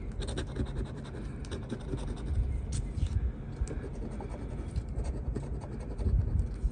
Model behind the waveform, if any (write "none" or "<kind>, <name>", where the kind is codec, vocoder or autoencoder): none